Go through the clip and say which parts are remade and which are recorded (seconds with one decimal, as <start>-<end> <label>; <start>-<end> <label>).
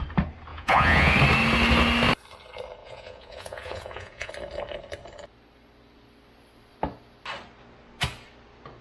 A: 0.0-0.5 recorded; 0.5-1.1 remade; 1.1-2.8 recorded; 2.8-4.3 remade; 4.3-8.8 recorded